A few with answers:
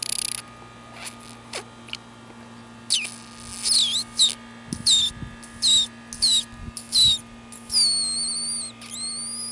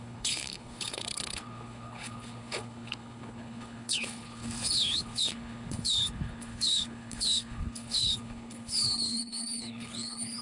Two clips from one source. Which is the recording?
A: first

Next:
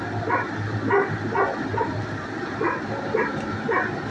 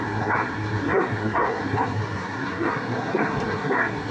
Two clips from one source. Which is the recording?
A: first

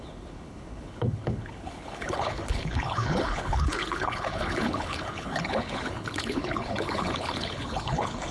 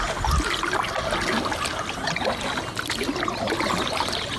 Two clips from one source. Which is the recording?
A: second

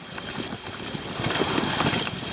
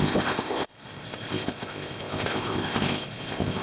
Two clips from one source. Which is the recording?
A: first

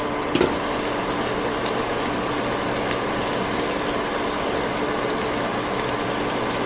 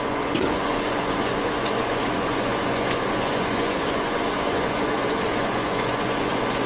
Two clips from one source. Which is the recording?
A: first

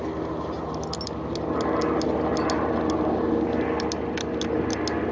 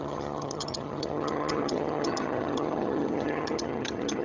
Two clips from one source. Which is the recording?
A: first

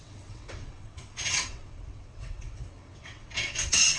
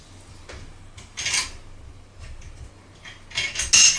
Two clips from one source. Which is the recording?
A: second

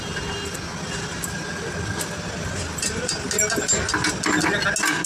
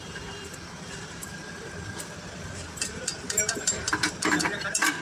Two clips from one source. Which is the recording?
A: first